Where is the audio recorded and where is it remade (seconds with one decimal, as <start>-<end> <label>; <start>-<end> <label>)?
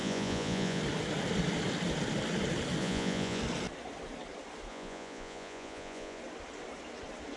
0.0-0.8 remade; 0.8-2.8 recorded; 2.8-3.4 remade; 3.4-4.7 recorded; 4.7-6.2 remade; 6.2-7.4 recorded